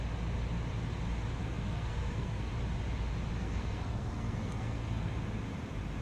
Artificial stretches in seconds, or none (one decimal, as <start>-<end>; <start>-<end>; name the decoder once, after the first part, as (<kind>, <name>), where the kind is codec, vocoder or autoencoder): 1.4-2.5 (codec, SNAC); 3.4-5.1